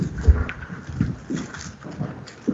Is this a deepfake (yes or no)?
yes